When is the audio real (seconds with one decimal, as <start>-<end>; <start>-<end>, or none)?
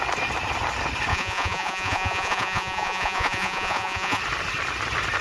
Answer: 0.0-1.1; 4.2-5.2